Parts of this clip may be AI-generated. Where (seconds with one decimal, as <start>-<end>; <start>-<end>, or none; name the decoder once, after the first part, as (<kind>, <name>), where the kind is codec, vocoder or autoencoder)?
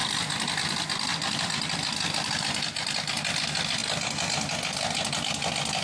1.1-2.3 (vocoder, BigVGAN v2)